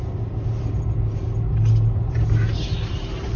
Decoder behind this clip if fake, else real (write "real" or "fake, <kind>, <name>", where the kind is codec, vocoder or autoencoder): real